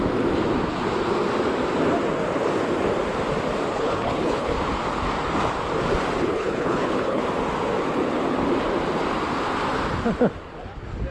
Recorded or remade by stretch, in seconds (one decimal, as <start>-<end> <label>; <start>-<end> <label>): 0.0-3.7 recorded; 3.7-4.5 remade; 4.5-6.2 recorded; 6.2-7.2 remade; 7.2-11.1 recorded